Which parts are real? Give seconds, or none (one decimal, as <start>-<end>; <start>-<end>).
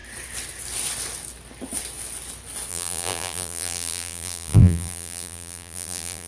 0.0-2.7